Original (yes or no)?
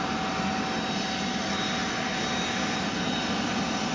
yes